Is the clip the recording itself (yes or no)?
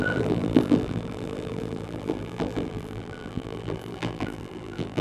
no